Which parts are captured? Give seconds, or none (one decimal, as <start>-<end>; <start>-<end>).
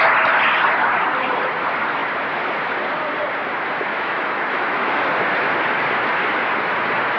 0.0-3.9; 5.0-7.2